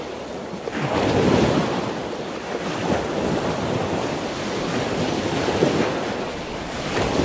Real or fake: real